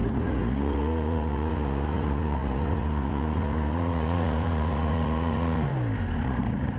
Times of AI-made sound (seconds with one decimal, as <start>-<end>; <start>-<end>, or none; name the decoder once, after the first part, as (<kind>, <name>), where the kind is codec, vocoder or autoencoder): 0.0-5.7 (vocoder, Vocos); 6.2-6.8